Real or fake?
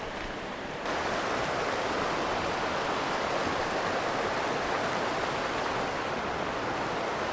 real